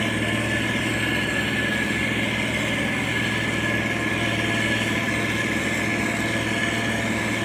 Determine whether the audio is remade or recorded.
recorded